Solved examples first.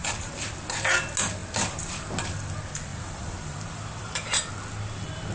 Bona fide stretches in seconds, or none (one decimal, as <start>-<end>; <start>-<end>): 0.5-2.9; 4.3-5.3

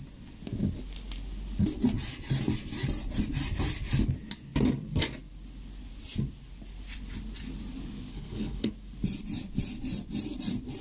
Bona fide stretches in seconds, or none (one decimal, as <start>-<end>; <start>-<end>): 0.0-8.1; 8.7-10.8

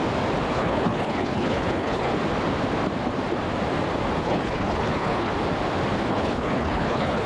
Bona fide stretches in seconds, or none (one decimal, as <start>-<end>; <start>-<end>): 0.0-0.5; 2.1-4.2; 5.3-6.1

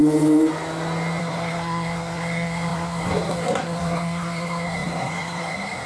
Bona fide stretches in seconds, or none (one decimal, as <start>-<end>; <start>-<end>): 0.0-1.2

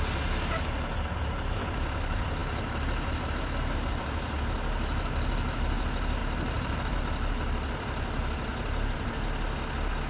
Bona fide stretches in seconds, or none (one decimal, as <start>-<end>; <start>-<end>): 0.0-6.2; 7.0-8.5; 9.1-10.1

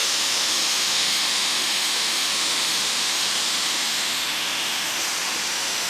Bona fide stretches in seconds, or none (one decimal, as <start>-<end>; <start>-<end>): 5.0-5.5

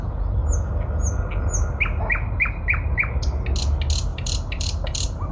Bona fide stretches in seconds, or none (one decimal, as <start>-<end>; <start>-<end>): 0.0-4.1